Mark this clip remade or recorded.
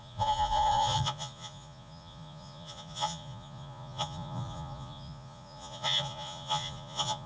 remade